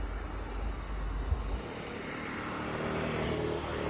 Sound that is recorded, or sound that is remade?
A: recorded